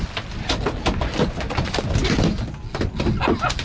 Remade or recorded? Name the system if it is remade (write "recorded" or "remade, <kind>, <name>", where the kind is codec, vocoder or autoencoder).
recorded